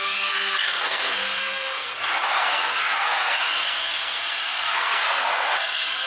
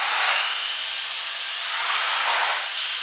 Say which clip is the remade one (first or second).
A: first